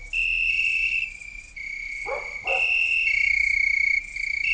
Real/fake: real